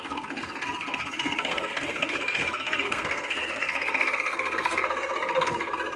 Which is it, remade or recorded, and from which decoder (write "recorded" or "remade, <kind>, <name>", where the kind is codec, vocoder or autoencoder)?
remade, codec, SNAC